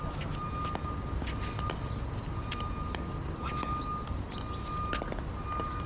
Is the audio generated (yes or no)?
no